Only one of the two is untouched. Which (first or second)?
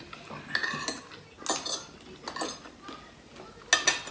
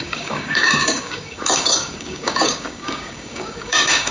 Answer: first